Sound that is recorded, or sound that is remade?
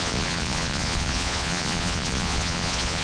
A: remade